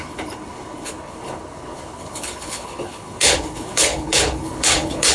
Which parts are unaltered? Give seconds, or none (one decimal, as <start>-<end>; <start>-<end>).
none